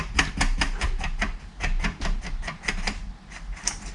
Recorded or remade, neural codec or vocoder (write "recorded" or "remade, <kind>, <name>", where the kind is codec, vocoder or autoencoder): recorded